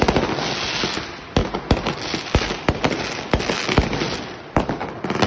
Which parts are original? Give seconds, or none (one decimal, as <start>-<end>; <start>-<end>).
0.0-5.3